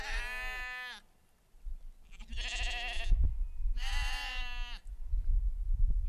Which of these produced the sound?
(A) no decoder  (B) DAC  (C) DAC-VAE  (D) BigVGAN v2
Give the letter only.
A